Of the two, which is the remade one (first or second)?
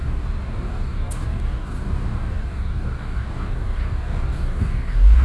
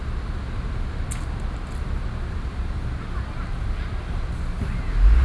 first